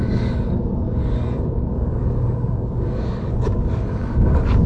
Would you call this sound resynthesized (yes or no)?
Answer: yes